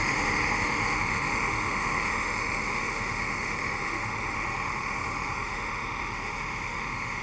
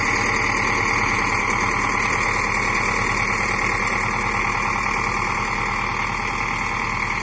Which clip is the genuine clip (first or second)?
second